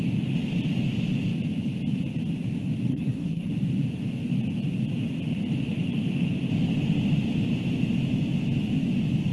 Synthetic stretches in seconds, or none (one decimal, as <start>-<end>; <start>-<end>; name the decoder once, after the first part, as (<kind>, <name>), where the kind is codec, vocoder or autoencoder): 2.9-3.5 (codec, SNAC)